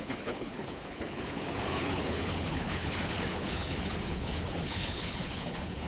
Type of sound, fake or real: fake